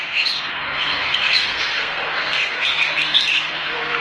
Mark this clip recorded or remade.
remade